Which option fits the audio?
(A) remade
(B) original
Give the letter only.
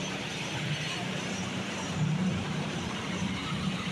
A